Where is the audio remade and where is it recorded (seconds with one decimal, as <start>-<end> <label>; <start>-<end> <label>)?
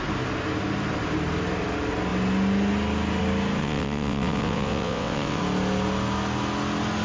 0.0-3.6 recorded; 3.6-5.4 remade; 5.4-7.0 recorded